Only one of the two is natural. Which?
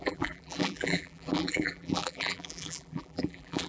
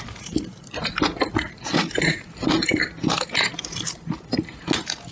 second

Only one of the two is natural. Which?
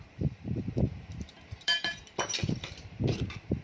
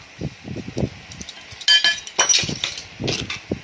second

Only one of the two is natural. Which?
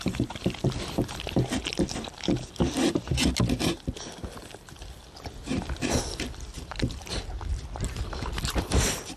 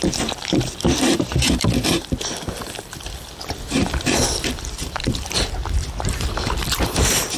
first